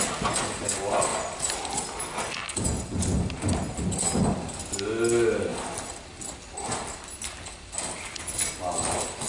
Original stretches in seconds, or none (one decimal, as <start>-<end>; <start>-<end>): 0.0-9.3